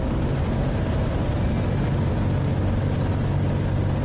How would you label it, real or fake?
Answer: real